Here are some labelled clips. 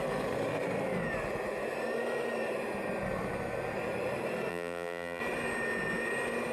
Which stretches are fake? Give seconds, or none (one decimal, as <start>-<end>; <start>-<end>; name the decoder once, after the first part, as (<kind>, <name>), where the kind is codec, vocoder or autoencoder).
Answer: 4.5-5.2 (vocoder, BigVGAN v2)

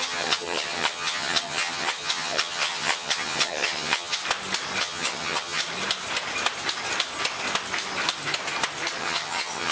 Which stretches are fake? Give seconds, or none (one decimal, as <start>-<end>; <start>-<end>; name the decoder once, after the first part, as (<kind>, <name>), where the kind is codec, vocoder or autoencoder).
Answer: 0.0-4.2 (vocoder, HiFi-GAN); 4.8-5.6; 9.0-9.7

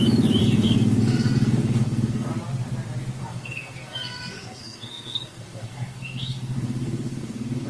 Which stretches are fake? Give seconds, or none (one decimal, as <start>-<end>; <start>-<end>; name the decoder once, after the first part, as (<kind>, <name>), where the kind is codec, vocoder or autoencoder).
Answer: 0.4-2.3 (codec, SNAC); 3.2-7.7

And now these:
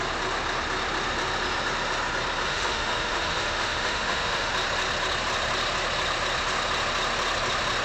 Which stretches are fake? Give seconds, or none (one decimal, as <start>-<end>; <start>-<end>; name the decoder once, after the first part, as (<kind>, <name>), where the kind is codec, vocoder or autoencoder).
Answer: 2.5-4.5 (autoencoder, DAC-VAE)

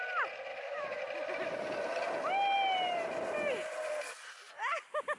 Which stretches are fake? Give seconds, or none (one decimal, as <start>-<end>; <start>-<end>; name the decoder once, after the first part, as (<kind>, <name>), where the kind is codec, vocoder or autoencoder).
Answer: 0.5-1.0 (autoencoder, DAC-VAE)